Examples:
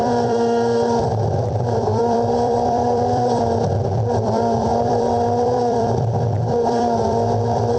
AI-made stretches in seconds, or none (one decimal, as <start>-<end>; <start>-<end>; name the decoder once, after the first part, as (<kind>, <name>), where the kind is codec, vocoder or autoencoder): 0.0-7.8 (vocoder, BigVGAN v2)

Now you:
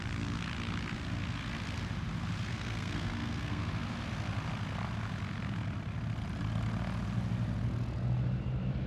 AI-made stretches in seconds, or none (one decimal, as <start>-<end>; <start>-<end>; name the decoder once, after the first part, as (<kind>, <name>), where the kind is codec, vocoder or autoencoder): 2.5-3.7 (codec, SNAC)

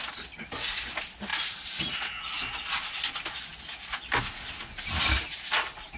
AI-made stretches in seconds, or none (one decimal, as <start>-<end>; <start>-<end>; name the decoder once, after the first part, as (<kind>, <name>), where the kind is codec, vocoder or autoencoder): none

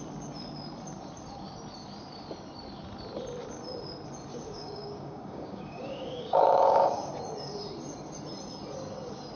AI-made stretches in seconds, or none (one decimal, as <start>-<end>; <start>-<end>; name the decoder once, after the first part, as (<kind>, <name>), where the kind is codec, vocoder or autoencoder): 4.3-7.1 (codec, DAC)

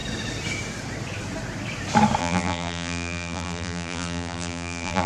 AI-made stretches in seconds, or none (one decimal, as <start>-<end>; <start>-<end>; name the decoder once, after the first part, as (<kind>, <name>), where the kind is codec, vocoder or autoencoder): 2.2-5.1 (vocoder, BigVGAN v2)